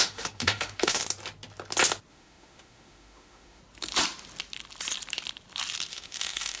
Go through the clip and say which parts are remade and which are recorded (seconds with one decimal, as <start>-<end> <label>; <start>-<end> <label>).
0.0-1.0 remade; 1.0-2.1 recorded; 2.1-3.6 remade; 3.6-5.9 recorded; 5.9-6.6 remade